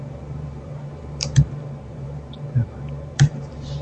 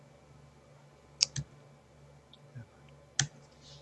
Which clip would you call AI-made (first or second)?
first